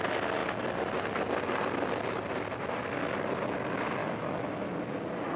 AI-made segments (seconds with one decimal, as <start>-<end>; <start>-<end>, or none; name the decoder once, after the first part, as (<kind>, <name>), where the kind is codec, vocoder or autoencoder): 4.0-4.7 (autoencoder, DAC-VAE)